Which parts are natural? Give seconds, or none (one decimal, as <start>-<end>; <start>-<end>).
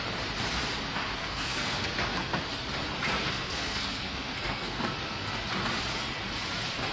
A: 0.0-1.2; 2.4-3.2; 4.9-6.9